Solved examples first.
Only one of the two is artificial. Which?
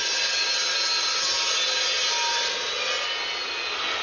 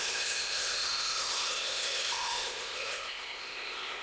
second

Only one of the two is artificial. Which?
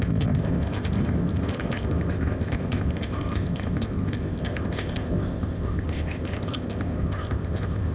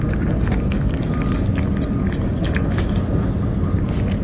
first